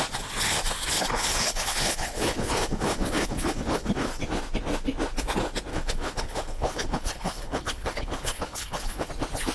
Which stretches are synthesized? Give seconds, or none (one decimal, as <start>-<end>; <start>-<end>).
1.1-4.2; 5.7-9.1